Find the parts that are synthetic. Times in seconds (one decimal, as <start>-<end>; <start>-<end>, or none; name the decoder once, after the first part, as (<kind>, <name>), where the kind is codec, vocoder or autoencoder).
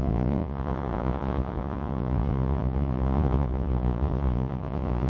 0.0-5.1 (vocoder, Vocos)